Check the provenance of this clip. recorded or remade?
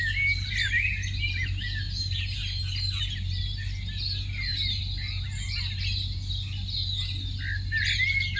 recorded